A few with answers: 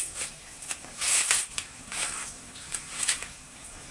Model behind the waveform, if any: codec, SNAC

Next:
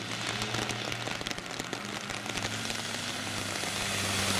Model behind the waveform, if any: none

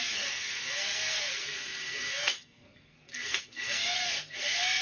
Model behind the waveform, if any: codec, SNAC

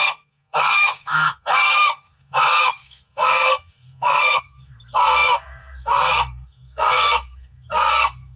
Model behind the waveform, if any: codec, SNAC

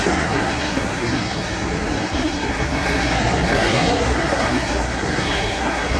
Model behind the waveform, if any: codec, SNAC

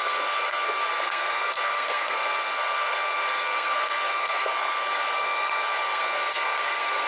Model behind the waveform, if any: codec, SNAC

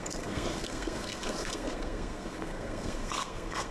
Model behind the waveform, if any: codec, SNAC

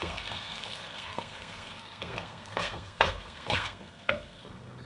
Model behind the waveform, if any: codec, SNAC